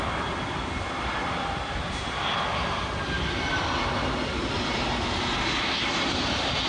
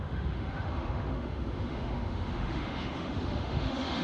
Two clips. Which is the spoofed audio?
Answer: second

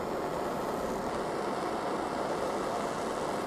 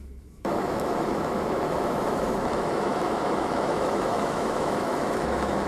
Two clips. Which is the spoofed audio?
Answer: second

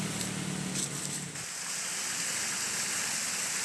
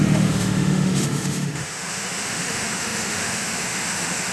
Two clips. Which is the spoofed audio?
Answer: second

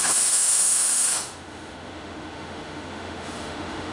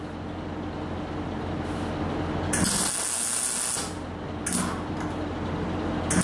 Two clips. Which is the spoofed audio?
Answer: first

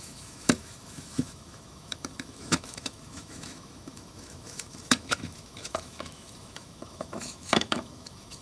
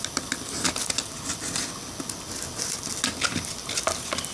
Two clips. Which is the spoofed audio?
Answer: first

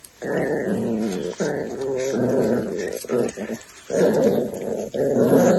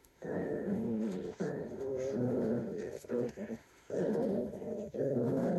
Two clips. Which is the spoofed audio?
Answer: second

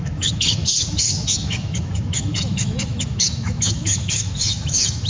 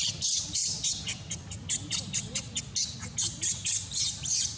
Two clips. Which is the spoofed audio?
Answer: first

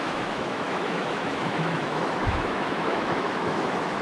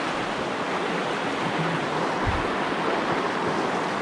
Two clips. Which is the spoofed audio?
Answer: first